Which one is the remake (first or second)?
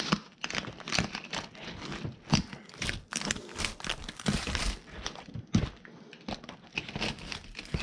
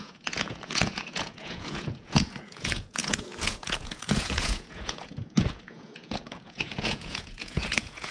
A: second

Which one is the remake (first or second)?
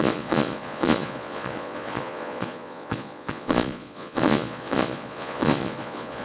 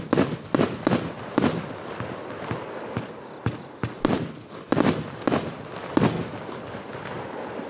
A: first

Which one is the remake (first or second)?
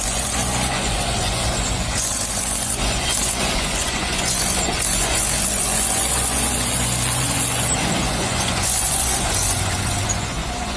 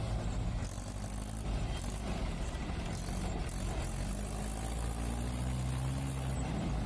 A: first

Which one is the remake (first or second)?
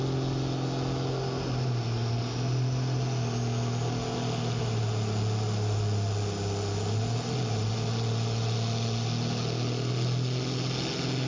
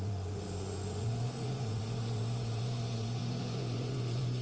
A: second